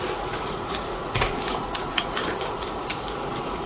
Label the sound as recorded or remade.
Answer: remade